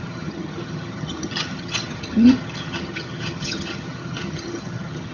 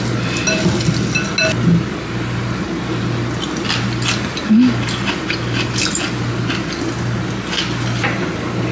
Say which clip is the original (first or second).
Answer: second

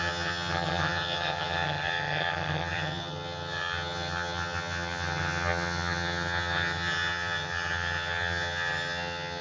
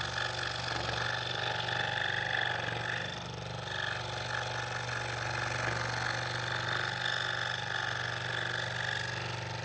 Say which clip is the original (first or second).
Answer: second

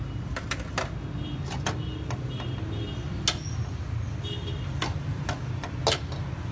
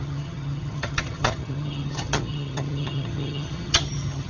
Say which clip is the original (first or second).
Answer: first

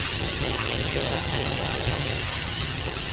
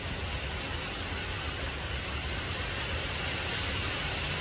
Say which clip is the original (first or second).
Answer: second